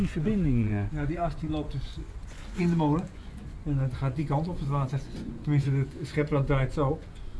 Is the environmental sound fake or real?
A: fake